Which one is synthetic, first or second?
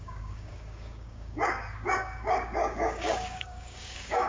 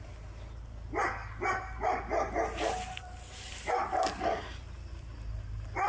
first